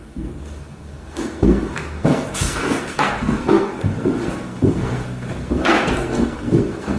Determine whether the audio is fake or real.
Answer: fake